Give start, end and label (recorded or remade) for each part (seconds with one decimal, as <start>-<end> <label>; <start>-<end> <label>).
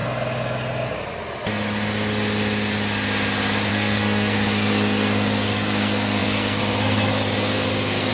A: 0.0-3.7 recorded; 3.7-8.1 remade